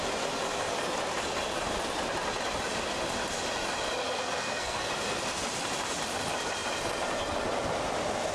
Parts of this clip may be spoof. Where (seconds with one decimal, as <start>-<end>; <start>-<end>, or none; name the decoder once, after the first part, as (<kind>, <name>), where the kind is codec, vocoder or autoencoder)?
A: 4.0-4.9 (codec, SNAC)